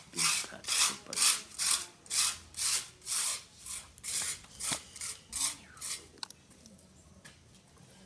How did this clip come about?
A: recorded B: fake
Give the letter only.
A